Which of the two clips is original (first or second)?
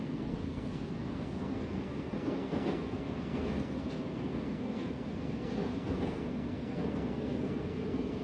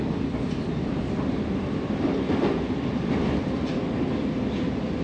second